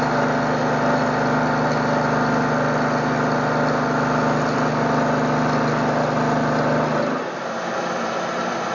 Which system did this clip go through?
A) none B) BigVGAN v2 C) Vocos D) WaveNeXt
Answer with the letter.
A